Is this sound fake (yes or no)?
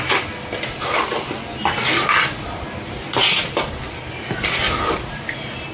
no